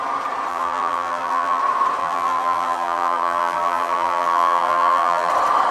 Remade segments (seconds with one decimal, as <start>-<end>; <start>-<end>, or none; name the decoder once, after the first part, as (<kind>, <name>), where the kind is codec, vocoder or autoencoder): 0.5-1.6 (vocoder, BigVGAN v2); 2.0-5.3